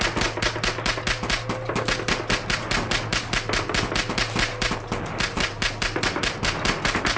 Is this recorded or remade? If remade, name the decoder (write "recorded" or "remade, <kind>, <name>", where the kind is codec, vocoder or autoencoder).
recorded